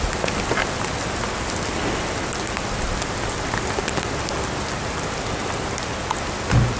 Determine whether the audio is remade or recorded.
recorded